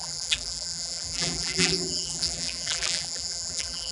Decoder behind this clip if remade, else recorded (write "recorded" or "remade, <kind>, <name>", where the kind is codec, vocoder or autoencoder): remade, vocoder, BigVGAN v2